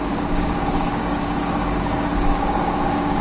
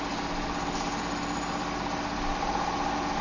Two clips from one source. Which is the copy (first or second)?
first